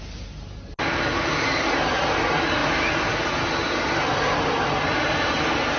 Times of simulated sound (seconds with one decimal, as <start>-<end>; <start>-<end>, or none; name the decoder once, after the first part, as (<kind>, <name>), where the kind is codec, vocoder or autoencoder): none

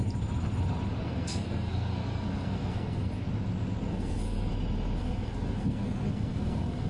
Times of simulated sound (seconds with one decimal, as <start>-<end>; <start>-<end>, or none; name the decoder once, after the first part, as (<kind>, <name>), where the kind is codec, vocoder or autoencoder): 1.0-3.1 (codec, SNAC); 3.9-4.5; 5.0-6.9

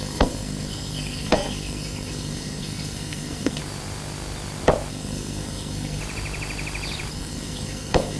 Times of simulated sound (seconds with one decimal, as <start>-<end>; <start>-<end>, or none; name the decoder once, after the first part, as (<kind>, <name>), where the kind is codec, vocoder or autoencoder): 0.0-3.6 (codec, SNAC); 4.9-6.0; 7.1-8.2

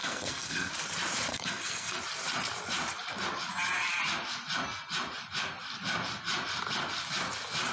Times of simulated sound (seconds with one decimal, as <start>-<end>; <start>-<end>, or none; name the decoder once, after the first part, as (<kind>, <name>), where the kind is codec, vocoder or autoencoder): 0.0-0.7 (codec, SNAC); 1.3-2.0

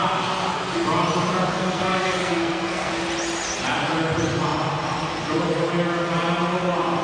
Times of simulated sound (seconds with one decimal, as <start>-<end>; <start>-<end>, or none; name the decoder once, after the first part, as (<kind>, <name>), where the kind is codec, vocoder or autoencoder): 1.5-2.9 (codec, SNAC)